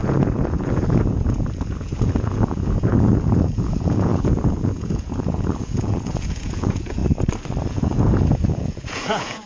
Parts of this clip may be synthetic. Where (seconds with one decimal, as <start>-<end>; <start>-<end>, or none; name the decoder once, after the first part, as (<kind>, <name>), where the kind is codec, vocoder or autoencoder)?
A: 0.0-7.0 (vocoder, Vocos); 7.7-9.5